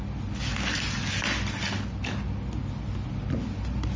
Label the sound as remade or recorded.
recorded